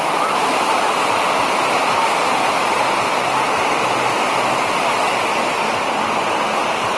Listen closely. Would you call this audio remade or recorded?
recorded